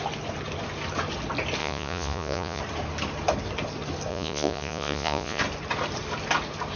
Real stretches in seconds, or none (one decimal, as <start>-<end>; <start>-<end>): 0.0-1.6; 2.6-4.1; 5.4-6.8